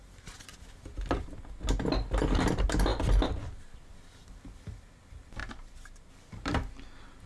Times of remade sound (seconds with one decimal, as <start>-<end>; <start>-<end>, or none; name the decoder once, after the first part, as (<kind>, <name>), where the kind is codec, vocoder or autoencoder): 5.4-6.1 (vocoder, BigVGAN v2)